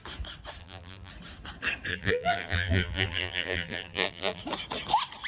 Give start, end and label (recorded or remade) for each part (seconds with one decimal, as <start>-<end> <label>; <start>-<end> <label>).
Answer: 0.0-0.6 recorded; 0.6-1.1 remade; 1.1-1.9 recorded; 1.9-4.4 remade; 4.4-5.3 recorded